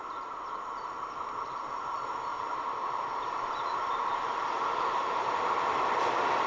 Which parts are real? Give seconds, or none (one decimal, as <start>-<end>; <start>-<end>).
0.0-2.3; 4.8-6.5